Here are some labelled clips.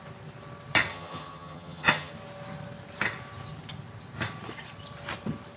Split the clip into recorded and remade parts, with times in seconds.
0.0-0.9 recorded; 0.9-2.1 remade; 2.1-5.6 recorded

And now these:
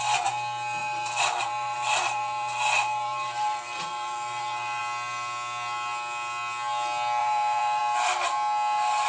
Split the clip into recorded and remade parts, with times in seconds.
0.0-0.8 recorded; 0.8-4.8 remade; 4.8-7.2 recorded; 7.2-7.8 remade; 7.8-9.1 recorded

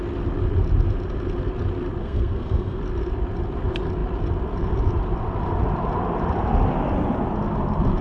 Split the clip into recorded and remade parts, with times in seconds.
0.0-2.0 recorded; 2.0-2.8 remade; 2.8-8.0 recorded

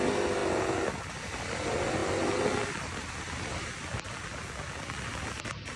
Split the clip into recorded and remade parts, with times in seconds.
0.0-5.8 recorded

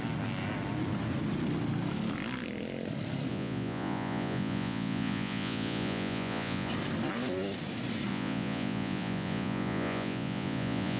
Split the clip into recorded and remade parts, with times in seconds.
0.0-3.3 recorded; 3.3-6.7 remade; 6.7-8.1 recorded; 8.1-11.0 remade